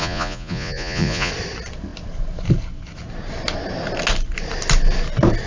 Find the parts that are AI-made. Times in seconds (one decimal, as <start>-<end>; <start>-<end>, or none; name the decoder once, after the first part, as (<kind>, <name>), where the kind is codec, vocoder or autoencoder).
0.0-1.3 (vocoder, Vocos)